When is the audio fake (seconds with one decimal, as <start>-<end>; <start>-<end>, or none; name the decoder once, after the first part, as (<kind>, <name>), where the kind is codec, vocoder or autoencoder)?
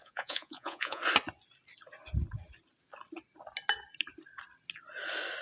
0.0-1.0 (vocoder, Vocos)